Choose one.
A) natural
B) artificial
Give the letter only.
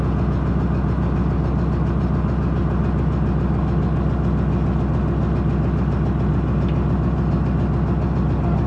A